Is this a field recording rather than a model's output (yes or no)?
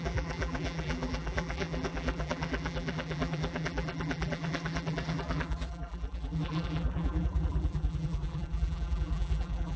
no